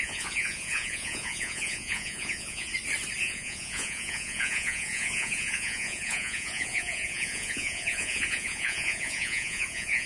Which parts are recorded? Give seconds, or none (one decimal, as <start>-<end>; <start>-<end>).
2.7-3.2